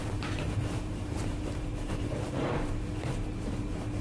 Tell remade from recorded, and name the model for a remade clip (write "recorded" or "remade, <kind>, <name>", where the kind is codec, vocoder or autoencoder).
remade, vocoder, BigVGAN v2